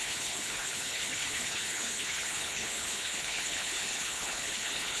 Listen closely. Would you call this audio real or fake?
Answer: fake